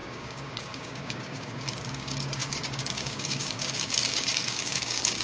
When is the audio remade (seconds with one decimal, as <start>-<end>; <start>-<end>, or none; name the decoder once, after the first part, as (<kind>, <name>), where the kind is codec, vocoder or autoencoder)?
0.0-5.2 (codec, DAC)